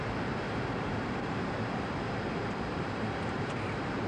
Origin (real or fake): fake